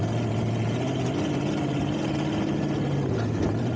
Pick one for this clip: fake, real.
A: real